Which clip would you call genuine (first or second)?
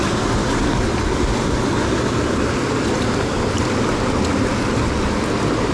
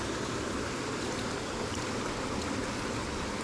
first